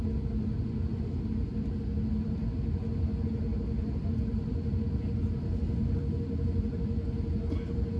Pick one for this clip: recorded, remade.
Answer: recorded